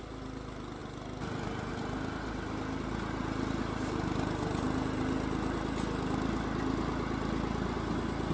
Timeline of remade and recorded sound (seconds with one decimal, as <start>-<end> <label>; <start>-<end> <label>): 0.0-8.3 recorded